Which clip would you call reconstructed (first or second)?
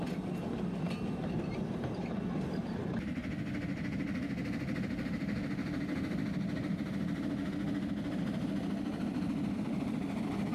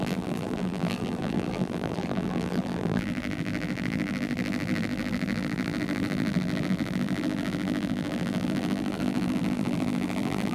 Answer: second